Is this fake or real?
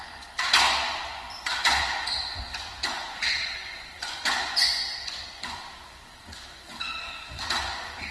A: fake